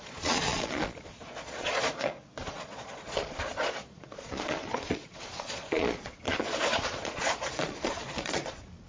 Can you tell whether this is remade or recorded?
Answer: remade